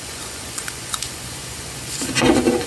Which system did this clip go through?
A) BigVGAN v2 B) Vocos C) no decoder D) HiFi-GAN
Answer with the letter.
B